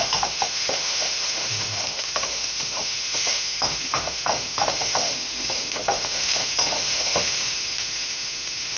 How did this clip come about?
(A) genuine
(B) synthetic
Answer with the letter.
B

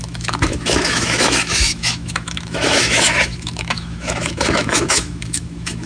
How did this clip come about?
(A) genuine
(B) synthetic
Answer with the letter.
B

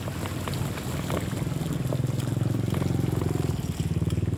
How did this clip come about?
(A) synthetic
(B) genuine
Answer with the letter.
B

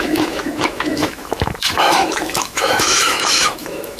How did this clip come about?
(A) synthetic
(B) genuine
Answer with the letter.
A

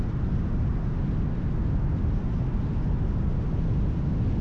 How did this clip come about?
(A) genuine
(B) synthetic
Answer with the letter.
A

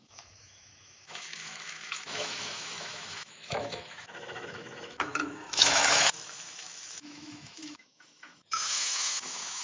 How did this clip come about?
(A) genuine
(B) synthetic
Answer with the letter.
B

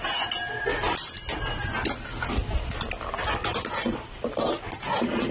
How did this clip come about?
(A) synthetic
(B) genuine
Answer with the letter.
B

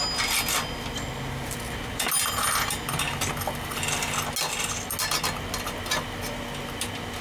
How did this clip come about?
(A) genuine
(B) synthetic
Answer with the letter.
A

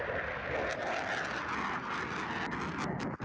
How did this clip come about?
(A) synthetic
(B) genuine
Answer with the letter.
B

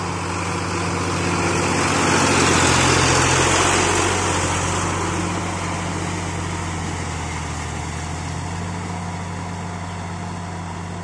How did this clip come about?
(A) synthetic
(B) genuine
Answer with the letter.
B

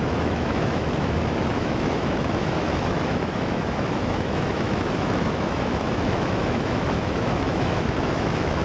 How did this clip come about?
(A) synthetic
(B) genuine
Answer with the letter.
A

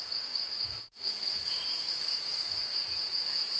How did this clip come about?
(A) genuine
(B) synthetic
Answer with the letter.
B